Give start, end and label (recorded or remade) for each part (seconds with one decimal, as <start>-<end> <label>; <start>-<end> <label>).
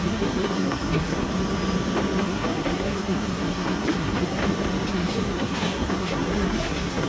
0.0-1.3 remade; 1.3-2.2 recorded; 2.2-4.4 remade; 4.4-4.9 recorded; 4.9-7.1 remade